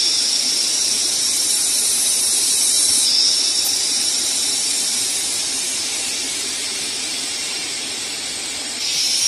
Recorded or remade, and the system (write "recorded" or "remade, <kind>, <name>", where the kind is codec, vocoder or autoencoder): remade, vocoder, BigVGAN v2